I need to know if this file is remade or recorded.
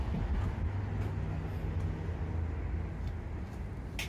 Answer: recorded